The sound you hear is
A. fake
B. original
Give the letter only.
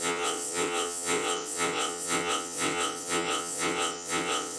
A